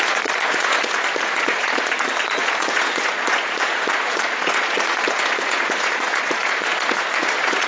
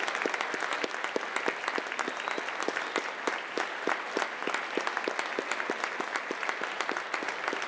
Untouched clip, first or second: second